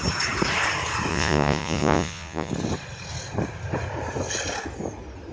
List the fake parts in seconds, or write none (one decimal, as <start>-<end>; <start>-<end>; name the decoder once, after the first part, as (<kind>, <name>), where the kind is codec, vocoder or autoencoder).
1.1-2.5 (vocoder, Vocos)